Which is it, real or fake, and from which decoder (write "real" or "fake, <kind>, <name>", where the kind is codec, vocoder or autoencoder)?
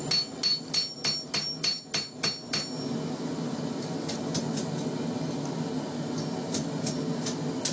real